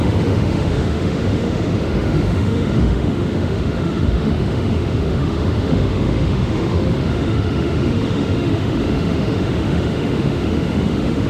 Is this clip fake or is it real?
fake